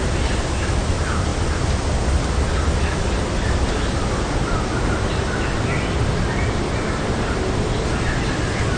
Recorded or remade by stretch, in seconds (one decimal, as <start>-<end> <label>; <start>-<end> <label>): 0.0-8.8 recorded